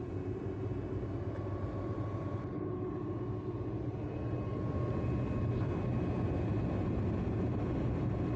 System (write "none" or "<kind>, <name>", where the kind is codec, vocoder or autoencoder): none